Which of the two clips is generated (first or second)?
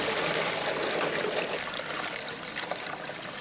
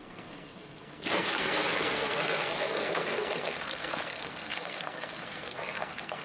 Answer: second